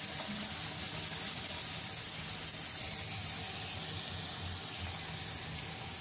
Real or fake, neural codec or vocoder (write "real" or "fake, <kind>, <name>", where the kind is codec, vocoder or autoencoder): real